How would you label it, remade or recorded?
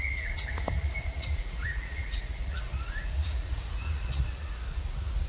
remade